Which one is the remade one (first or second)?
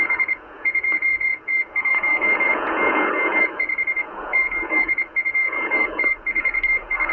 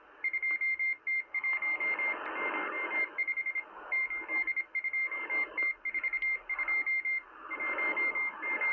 first